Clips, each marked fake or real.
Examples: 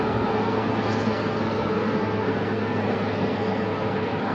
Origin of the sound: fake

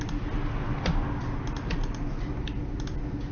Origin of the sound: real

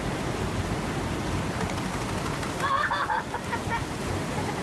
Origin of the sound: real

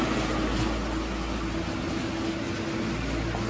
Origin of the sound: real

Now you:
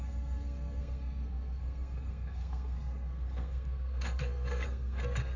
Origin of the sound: fake